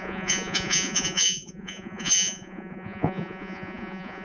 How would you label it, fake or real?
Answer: fake